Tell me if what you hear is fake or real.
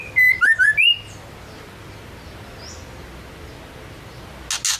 real